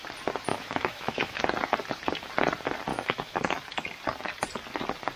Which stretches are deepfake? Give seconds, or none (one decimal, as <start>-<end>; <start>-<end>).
0.5-1.4; 2.9-3.4